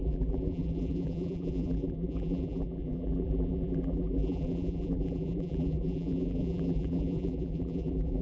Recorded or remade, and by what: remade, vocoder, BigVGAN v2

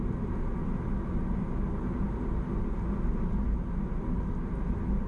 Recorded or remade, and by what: recorded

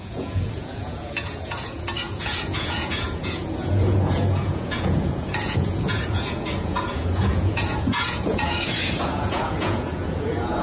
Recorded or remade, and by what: remade, vocoder, Vocos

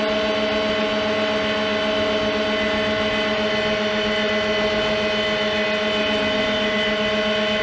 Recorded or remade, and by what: recorded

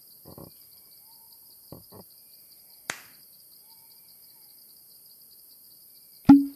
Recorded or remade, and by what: recorded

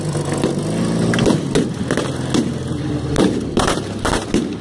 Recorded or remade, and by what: recorded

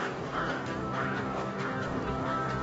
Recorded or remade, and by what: remade, codec, DAC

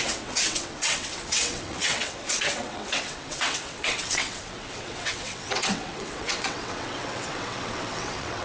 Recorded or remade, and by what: remade, vocoder, WaveNeXt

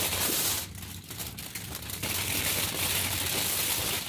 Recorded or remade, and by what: recorded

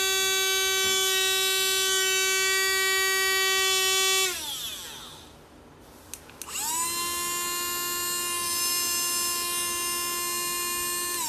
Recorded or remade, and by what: recorded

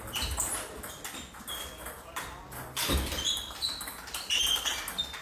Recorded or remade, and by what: recorded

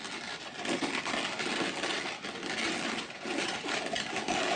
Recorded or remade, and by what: recorded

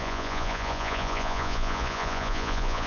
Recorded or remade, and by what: remade, vocoder, Vocos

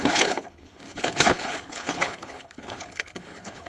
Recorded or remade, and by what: remade, codec, HILCodec